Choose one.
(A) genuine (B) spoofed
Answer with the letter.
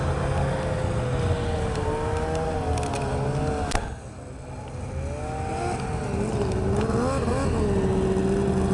A